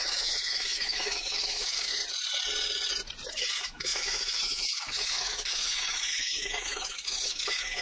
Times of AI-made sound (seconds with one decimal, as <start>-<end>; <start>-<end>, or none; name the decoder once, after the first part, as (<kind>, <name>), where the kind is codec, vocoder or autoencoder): 0.0-2.0 (autoencoder, DAC-VAE); 3.3-7.8